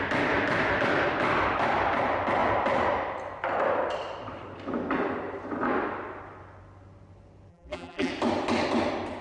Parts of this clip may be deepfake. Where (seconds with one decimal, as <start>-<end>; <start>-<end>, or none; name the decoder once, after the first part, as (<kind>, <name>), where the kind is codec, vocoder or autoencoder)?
7.5-8.1 (vocoder, BigVGAN v2)